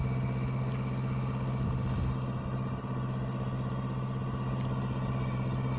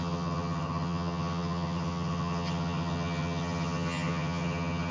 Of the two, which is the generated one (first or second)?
second